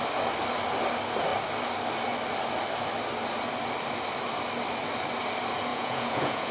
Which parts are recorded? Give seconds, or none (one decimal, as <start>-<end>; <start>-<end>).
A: 0.0-5.7